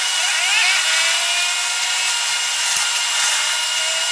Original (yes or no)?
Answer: yes